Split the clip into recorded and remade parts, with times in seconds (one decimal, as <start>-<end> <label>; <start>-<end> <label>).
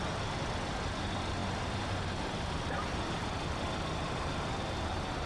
0.0-1.4 recorded; 1.4-4.6 remade; 4.6-5.3 recorded